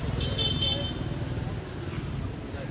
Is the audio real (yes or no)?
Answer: yes